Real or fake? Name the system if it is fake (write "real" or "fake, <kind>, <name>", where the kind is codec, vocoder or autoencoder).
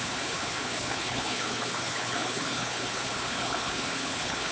fake, codec, HILCodec